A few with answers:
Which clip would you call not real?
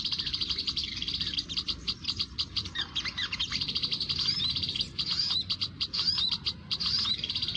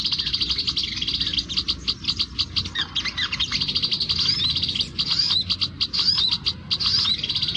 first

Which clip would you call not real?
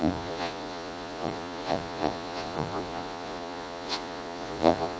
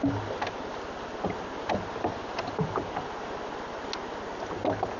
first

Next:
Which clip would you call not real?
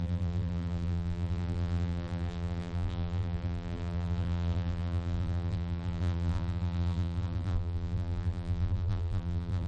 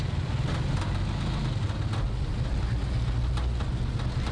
first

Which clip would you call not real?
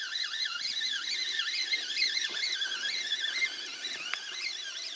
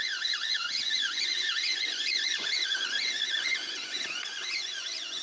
second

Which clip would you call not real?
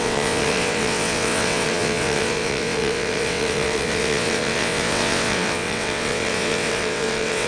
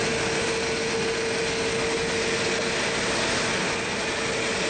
first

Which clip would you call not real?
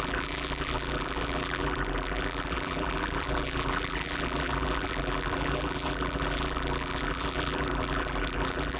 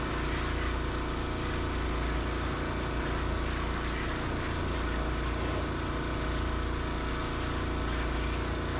first